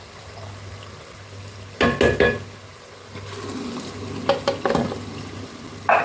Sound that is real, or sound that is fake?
real